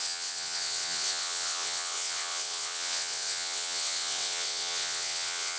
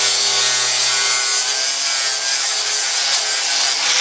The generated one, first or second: first